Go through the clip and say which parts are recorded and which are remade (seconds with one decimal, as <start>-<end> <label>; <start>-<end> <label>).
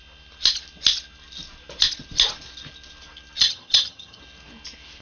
0.0-3.4 recorded; 3.4-4.2 remade; 4.2-5.0 recorded